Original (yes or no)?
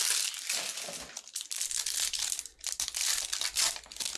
yes